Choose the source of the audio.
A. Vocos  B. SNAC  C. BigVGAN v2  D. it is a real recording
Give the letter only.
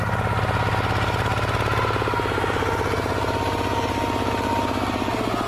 D